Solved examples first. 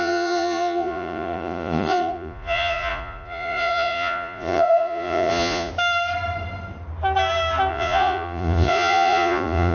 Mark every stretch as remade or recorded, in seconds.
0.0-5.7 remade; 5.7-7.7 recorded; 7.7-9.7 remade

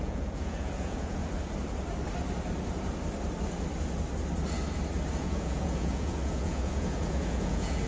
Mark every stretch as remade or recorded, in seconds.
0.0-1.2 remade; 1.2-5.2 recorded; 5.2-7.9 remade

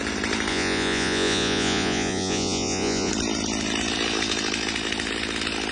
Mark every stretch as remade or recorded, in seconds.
0.0-0.5 recorded; 0.5-3.1 remade; 3.1-5.7 recorded

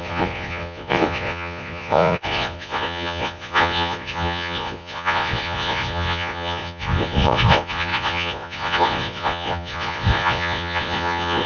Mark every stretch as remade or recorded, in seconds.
0.0-11.5 remade

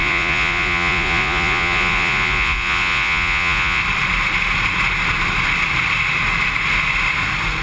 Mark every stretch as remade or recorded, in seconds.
0.0-3.8 remade; 3.8-7.6 recorded